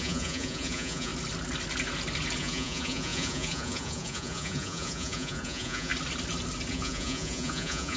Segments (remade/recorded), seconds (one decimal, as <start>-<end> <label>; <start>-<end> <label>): 0.0-1.1 remade; 1.1-2.4 recorded; 2.4-5.9 remade; 5.9-6.7 recorded; 6.7-8.0 remade